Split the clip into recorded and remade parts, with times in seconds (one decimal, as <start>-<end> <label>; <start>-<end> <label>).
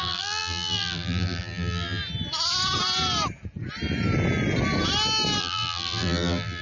0.0-2.0 remade; 2.0-5.4 recorded; 5.4-6.6 remade